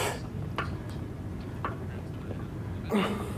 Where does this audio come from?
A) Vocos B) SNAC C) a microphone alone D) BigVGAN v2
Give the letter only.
C